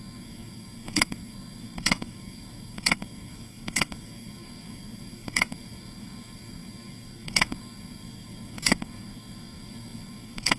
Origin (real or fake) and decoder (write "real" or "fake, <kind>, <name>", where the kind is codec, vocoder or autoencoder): fake, codec, SNAC